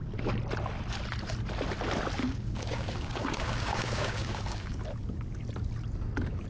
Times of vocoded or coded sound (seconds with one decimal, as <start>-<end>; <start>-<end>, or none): 2.2-4.8